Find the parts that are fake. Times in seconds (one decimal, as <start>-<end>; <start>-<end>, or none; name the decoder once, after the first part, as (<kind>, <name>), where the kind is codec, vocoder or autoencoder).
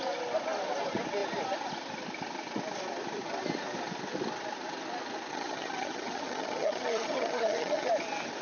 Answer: 5.3-7.9 (vocoder, HiFi-GAN)